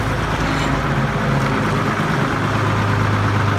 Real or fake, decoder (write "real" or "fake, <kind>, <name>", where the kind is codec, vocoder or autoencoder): real